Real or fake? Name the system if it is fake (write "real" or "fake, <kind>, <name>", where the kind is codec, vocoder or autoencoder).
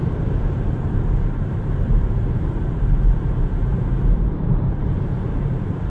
fake, vocoder, BigVGAN v2